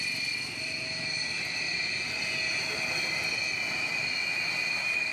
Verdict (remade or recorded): recorded